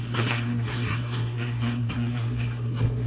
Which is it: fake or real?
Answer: fake